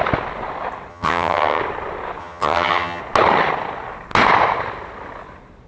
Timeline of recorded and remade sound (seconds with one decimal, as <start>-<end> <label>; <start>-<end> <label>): 0.0-0.9 recorded; 0.9-1.6 remade; 1.6-2.2 recorded; 2.2-3.0 remade; 3.0-5.7 recorded